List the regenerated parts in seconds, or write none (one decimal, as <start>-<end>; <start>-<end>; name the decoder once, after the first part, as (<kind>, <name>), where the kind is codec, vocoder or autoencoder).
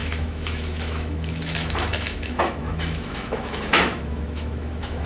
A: 0.0-5.1 (autoencoder, DAC-VAE)